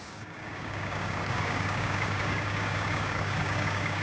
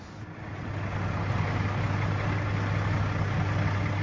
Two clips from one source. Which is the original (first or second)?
second